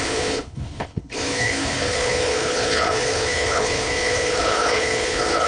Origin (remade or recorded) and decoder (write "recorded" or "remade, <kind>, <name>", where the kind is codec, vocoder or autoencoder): remade, codec, HILCodec